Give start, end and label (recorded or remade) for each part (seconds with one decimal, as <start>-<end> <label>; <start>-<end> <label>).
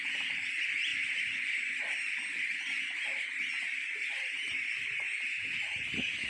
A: 0.0-6.3 recorded